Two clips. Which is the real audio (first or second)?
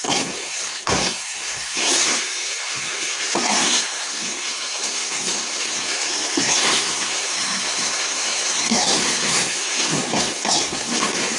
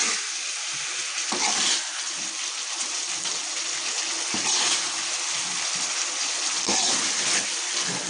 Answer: second